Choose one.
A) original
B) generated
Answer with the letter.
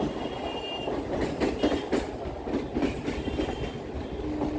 A